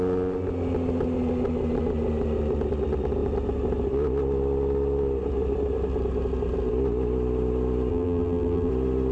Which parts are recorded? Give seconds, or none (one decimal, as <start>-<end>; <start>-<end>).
0.0-7.9; 8.7-9.1